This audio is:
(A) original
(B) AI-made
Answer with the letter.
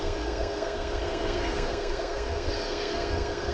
B